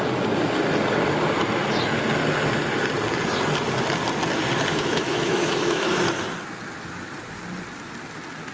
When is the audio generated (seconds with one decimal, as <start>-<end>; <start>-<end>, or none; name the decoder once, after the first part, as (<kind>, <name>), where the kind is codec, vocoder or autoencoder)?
4.7-6.0 (autoencoder, DAC-VAE)